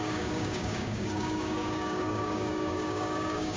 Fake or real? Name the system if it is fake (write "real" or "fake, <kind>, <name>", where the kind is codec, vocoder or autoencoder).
fake, codec, DAC